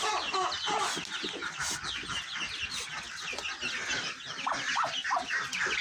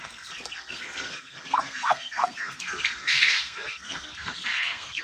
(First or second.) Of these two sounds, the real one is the first